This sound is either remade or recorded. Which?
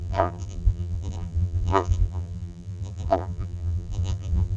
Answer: remade